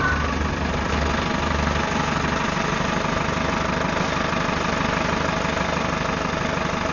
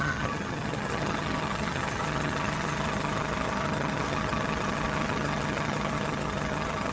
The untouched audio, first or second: first